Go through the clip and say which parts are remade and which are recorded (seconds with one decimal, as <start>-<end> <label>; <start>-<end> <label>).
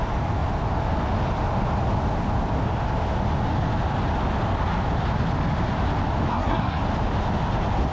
0.0-6.3 recorded; 6.3-6.8 remade; 6.8-7.9 recorded